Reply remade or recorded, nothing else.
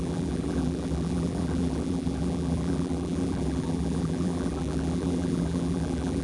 remade